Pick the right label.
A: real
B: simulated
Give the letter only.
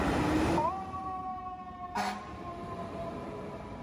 B